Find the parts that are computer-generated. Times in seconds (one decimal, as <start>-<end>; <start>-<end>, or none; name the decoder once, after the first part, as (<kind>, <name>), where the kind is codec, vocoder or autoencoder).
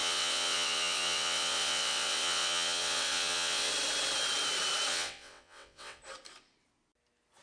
0.0-3.7 (vocoder, WaveNeXt); 4.9-6.0